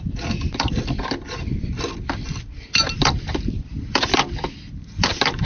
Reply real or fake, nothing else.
real